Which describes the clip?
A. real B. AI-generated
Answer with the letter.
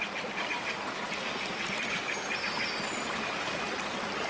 A